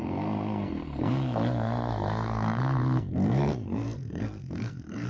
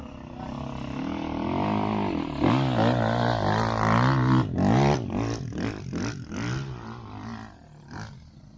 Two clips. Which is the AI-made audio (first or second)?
first